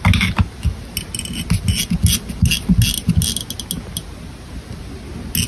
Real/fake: real